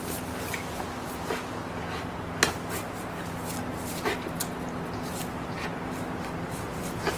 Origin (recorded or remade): recorded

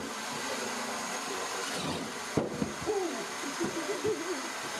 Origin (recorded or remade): recorded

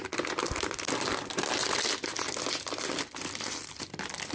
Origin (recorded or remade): remade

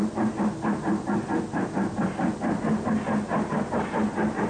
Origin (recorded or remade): recorded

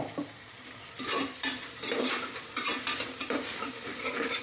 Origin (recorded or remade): remade